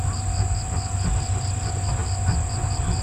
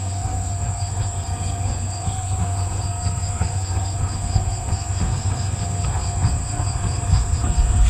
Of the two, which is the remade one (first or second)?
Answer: second